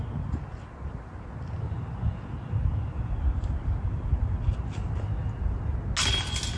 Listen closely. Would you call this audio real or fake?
real